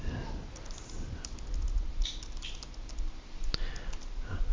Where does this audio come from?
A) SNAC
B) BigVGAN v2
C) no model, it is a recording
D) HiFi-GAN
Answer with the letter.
C